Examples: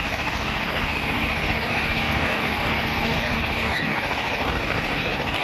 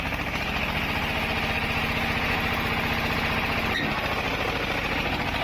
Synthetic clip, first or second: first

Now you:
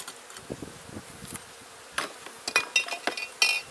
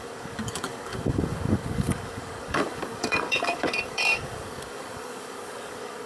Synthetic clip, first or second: second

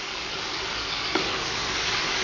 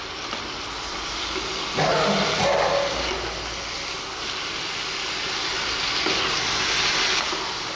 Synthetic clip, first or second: first